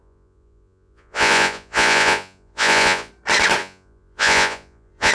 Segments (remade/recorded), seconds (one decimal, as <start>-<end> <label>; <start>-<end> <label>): 0.0-3.1 remade; 3.1-3.6 recorded; 3.6-5.1 remade